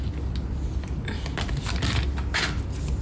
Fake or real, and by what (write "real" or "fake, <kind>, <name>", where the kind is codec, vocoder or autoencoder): real